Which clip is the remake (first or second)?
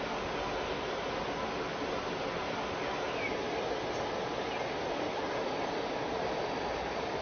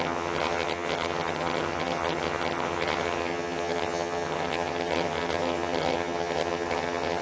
second